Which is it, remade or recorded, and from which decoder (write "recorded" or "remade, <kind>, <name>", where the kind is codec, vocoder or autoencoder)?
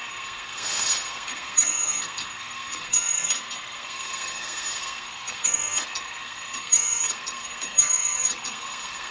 remade, codec, SNAC